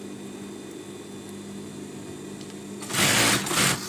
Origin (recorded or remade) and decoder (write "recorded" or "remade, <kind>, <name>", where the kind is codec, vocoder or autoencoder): recorded